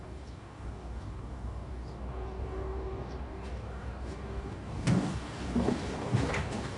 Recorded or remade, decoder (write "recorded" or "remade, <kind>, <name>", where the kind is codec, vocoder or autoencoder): remade, codec, DAC